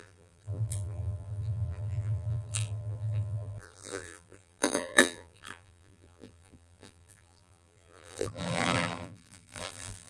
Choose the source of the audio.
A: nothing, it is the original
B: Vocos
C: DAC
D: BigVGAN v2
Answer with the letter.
D